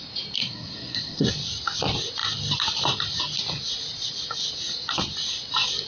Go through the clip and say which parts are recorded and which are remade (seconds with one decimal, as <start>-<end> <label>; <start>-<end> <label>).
0.0-0.4 recorded; 0.4-1.3 remade; 1.3-5.9 recorded